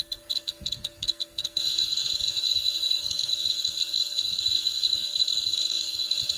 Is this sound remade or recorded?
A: remade